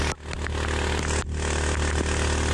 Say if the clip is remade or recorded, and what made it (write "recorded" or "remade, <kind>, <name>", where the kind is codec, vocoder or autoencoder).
recorded